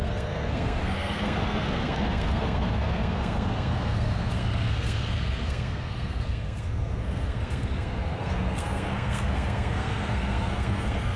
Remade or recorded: remade